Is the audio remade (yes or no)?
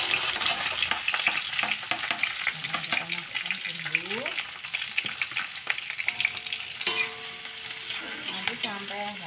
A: no